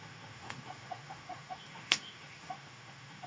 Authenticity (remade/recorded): remade